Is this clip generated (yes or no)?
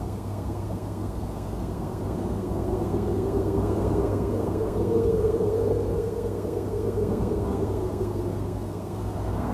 yes